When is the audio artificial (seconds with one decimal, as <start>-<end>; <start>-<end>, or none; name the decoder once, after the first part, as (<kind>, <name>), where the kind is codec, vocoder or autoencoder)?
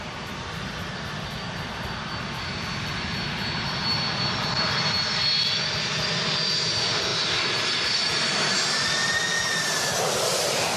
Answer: none